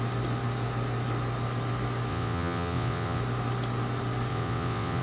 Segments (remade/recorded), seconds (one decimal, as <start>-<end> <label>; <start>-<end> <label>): 0.0-2.1 recorded; 2.1-3.2 remade; 3.2-4.3 recorded; 4.3-5.0 remade